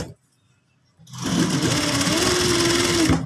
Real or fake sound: real